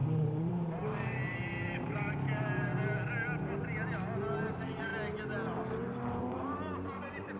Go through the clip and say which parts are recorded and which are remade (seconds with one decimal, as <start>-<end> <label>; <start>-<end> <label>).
0.0-2.7 remade; 2.7-4.5 recorded; 4.5-4.9 remade; 4.9-6.2 recorded; 6.2-7.4 remade